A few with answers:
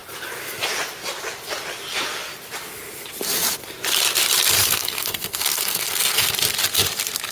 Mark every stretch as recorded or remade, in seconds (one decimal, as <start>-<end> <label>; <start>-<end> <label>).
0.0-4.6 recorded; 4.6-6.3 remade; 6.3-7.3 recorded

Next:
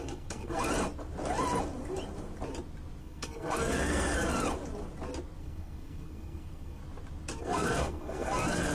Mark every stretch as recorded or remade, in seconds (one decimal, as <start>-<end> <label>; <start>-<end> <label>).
0.0-0.7 remade; 0.7-3.0 recorded; 3.0-4.3 remade; 4.3-5.4 recorded; 5.4-6.8 remade; 6.8-7.4 recorded; 7.4-8.7 remade

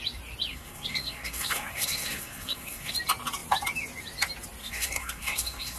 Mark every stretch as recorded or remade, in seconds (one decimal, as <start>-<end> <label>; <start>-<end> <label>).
0.0-0.5 recorded; 0.5-2.9 remade; 2.9-4.6 recorded; 4.6-5.8 remade

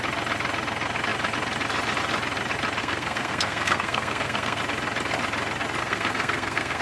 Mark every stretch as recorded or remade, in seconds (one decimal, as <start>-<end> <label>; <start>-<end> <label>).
0.0-2.8 recorded; 2.8-4.6 remade; 4.6-5.8 recorded; 5.8-6.8 remade